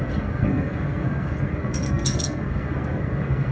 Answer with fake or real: fake